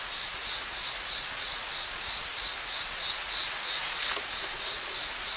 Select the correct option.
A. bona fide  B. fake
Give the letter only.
B